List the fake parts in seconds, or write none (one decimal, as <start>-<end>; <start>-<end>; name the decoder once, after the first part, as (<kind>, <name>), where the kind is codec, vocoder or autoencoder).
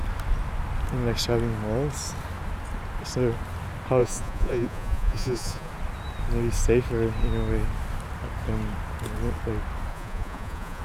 4.0-5.7 (vocoder, Vocos); 9.9-10.8